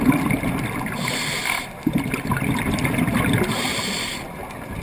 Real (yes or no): yes